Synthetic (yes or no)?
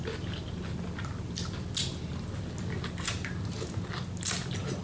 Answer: no